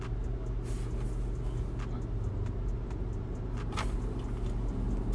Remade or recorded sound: recorded